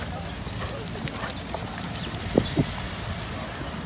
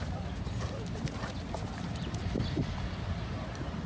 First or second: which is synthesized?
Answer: second